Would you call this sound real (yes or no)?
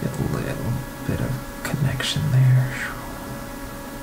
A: yes